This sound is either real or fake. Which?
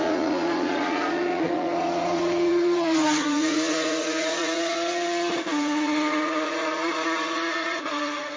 fake